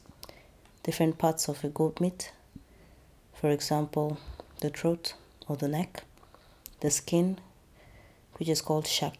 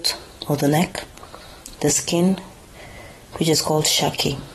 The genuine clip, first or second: first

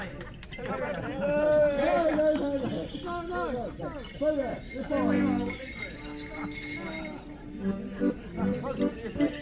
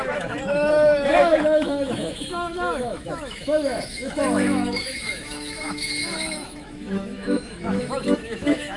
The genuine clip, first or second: first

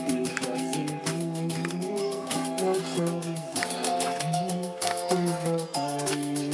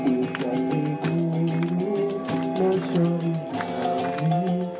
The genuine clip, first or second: second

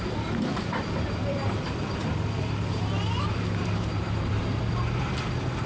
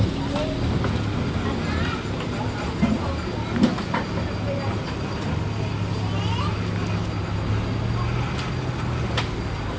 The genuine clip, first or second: second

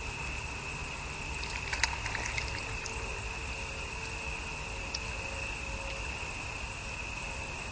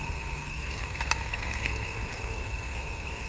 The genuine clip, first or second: first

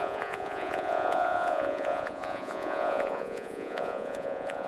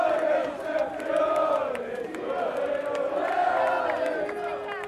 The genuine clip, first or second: second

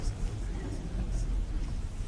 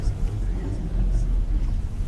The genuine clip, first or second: second